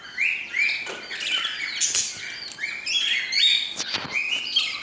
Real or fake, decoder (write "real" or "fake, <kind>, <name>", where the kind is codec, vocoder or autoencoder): real